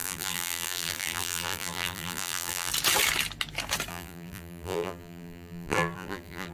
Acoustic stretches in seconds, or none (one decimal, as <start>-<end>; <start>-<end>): 2.7-3.9